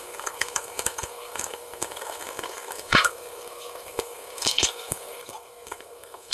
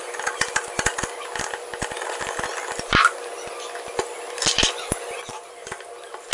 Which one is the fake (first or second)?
first